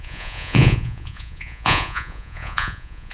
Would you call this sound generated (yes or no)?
yes